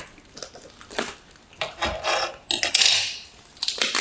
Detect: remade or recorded recorded